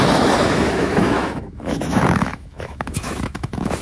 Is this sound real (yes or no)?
no